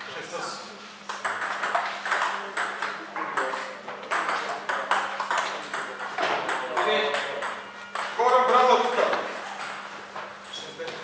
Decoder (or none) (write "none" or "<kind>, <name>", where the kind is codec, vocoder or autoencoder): none